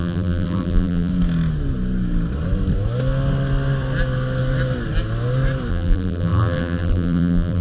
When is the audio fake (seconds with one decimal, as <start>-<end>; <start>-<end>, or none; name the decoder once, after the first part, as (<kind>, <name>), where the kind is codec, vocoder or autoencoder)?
0.0-1.1 (vocoder, BigVGAN v2); 5.7-7.6